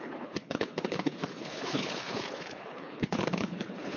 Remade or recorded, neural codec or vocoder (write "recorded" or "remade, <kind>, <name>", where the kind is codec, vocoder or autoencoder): remade, codec, HILCodec